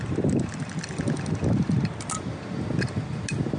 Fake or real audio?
real